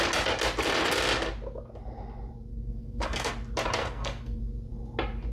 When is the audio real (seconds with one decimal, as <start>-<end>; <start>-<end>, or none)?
0.0-2.5; 3.3-3.8; 4.4-5.3